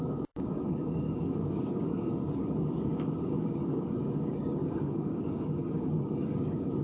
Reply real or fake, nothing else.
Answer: fake